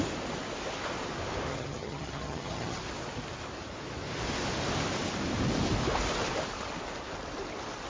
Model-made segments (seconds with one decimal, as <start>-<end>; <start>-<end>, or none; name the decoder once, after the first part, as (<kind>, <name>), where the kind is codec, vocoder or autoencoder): 1.5-2.8 (vocoder, HiFi-GAN)